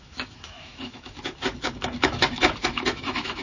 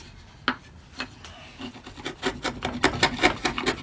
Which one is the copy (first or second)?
first